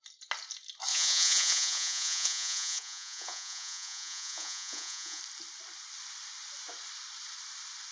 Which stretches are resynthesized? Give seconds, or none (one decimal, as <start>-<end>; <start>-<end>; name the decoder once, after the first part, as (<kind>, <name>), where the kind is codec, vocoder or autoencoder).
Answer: 0.9-5.2 (vocoder, Vocos)